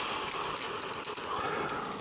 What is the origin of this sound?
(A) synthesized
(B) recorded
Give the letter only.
B